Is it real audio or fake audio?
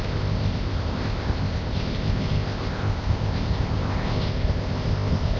fake